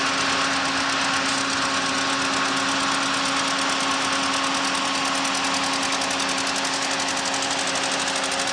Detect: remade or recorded recorded